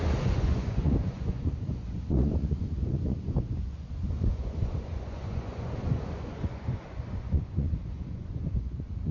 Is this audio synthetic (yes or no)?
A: yes